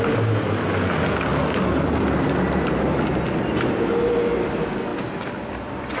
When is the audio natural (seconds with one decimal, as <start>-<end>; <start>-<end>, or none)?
0.0-1.3; 3.1-4.9